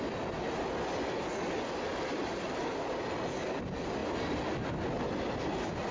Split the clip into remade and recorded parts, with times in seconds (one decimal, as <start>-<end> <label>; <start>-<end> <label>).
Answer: 0.0-1.9 recorded; 1.9-2.6 remade; 2.6-5.9 recorded